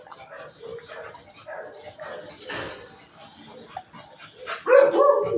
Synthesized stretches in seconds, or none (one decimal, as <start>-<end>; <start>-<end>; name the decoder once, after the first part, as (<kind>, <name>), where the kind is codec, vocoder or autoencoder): none

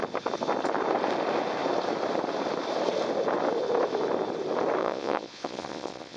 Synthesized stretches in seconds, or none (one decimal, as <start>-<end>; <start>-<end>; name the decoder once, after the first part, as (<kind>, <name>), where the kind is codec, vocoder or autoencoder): 4.8-6.2 (vocoder, Vocos)